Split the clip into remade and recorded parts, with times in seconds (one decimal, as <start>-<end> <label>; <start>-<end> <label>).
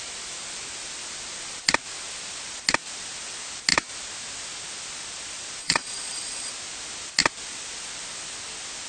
0.0-5.6 recorded; 5.6-6.5 remade; 6.5-8.9 recorded